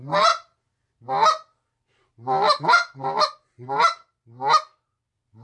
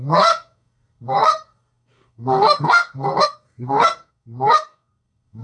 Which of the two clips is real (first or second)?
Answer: first